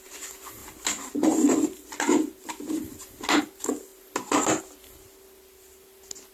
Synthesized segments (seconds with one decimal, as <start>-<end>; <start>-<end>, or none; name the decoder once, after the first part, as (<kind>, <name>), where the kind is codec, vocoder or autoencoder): none